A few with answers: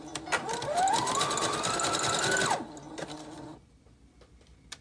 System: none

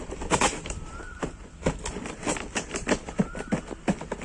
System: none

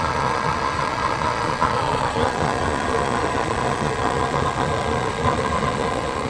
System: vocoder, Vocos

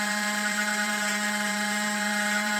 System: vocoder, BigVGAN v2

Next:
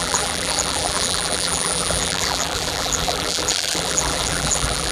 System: vocoder, BigVGAN v2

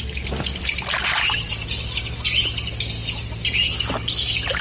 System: none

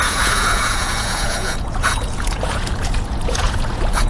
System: vocoder, Vocos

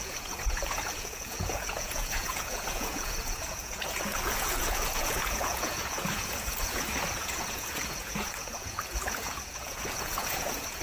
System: vocoder, Vocos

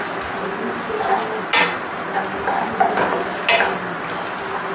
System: none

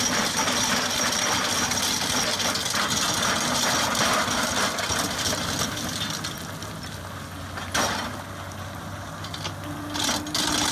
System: none